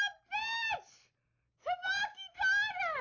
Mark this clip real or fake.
real